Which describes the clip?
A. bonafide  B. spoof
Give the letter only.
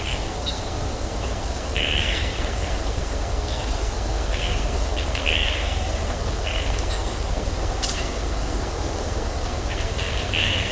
B